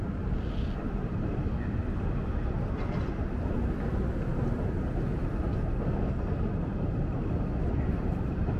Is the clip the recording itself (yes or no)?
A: yes